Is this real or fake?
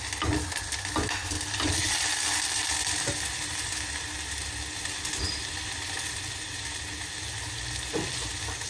real